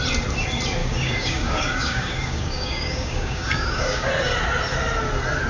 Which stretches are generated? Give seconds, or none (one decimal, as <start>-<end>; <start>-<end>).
0.8-4.1